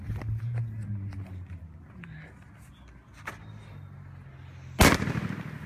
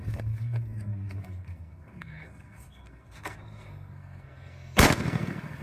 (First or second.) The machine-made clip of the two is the second